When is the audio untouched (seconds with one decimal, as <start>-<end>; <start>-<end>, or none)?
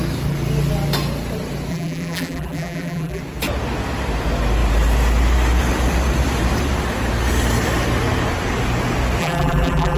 0.0-1.7; 3.2-9.2